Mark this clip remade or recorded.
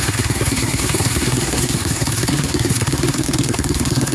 remade